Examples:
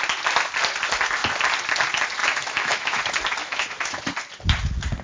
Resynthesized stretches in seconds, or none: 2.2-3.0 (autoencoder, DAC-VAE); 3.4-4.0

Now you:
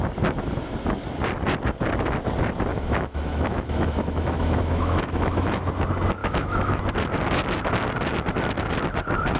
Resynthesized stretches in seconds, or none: 2.7-5.7 (autoencoder, DAC-VAE); 6.2-6.8

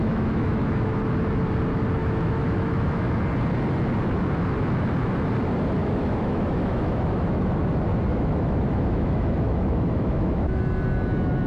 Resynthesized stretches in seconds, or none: 0.0-1.0 (autoencoder, DAC-VAE); 2.0-3.2; 5.8-7.6; 8.1-10.6

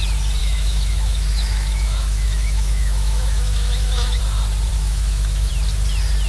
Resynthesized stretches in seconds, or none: 0.4-4.2 (autoencoder, DAC-VAE); 4.7-5.5